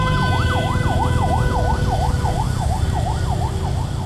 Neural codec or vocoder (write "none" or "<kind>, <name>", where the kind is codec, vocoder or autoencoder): none